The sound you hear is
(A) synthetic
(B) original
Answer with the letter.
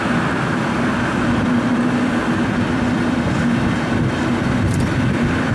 B